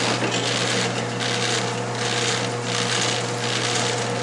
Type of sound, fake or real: real